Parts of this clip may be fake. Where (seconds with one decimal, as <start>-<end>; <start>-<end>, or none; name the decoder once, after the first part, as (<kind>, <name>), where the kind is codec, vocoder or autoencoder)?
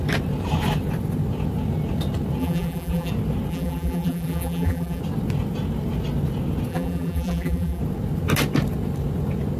2.4-3.1 (vocoder, BigVGAN v2); 3.5-5.0; 6.7-7.8